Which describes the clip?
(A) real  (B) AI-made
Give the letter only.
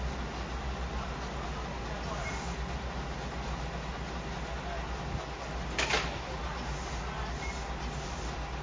A